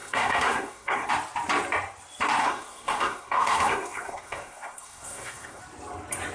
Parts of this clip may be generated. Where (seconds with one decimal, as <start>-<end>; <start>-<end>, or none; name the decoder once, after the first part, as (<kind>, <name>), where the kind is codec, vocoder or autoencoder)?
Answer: 0.0-1.1 (codec, SNAC); 2.4-5.6